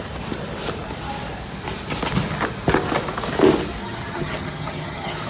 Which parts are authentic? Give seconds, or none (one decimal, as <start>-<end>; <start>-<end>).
0.0-3.8